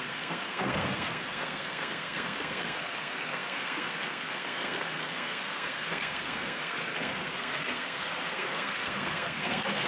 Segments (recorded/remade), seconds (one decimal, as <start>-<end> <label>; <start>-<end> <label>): 0.0-9.9 remade